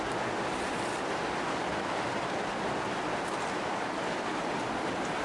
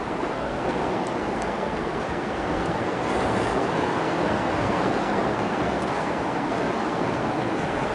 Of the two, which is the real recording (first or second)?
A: first